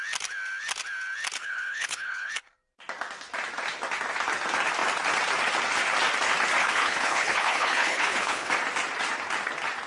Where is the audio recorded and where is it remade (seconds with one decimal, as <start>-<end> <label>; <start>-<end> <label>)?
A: 0.0-1.4 recorded; 1.4-2.3 remade; 2.3-6.6 recorded; 6.6-8.5 remade; 8.5-9.9 recorded